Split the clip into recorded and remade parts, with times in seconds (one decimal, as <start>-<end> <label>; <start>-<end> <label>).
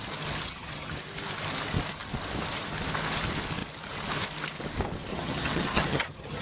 0.0-0.4 recorded; 0.4-1.0 remade; 1.0-5.1 recorded; 5.1-6.4 remade